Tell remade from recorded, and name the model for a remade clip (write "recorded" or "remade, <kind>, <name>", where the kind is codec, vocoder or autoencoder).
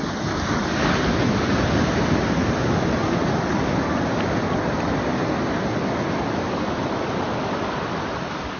recorded